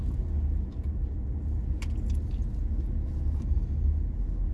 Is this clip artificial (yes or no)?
no